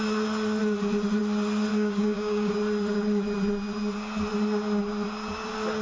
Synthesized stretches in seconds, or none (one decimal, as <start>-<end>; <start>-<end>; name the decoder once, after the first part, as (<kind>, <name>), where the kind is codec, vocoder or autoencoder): 1.7-2.5 (codec, DAC)